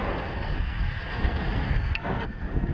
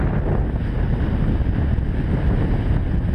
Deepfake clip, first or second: first